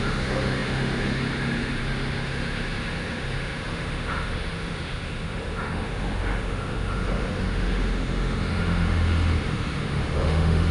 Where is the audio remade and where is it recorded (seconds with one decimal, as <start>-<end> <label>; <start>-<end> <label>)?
0.0-10.7 remade